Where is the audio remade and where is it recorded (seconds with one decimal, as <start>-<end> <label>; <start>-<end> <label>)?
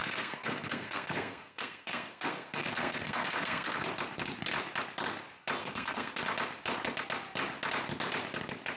0.0-3.8 remade; 3.8-5.6 recorded; 5.6-6.1 remade; 6.1-8.8 recorded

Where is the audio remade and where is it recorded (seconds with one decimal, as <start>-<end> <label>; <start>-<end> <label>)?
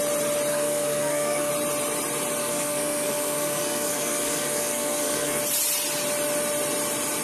0.0-0.5 recorded; 0.5-1.5 remade; 1.5-2.4 recorded; 2.4-5.4 remade; 5.4-7.2 recorded